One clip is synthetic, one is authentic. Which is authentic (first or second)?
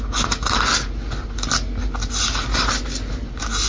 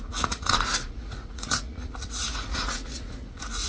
first